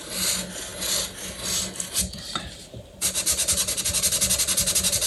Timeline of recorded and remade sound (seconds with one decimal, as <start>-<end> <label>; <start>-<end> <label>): 0.0-5.1 recorded